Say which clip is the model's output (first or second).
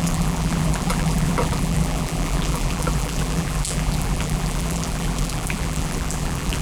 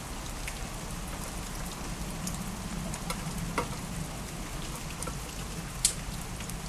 first